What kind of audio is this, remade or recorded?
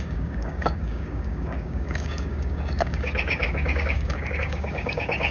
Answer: remade